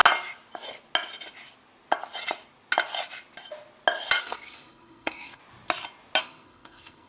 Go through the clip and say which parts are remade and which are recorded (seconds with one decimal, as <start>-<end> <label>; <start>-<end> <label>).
0.0-4.2 recorded; 4.2-5.4 remade; 5.4-6.2 recorded; 6.2-7.1 remade